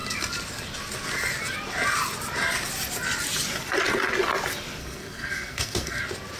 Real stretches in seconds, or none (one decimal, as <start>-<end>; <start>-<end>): 0.0-4.8; 6.0-6.4